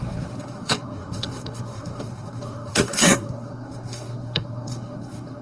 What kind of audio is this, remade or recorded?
remade